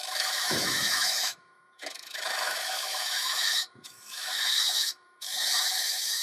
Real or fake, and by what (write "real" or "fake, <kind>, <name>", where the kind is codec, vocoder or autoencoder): fake, autoencoder, DAC-VAE